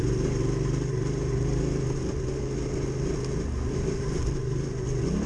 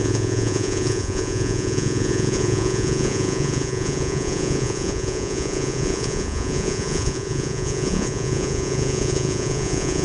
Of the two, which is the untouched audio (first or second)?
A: first